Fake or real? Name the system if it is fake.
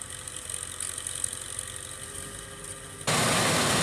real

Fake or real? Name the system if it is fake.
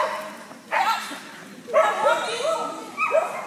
real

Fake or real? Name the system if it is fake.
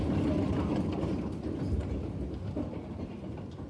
real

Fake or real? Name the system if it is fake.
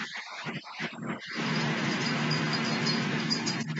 real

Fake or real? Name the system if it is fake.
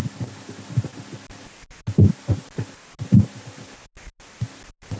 real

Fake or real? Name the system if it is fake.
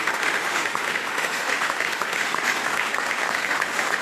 fake, autoencoder, DAC-VAE